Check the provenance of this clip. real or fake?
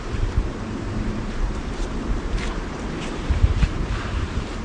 fake